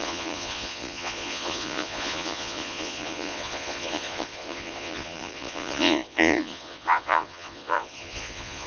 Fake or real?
fake